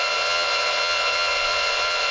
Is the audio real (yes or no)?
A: no